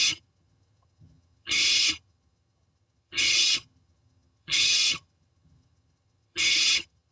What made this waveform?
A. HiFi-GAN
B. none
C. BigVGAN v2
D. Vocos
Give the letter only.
A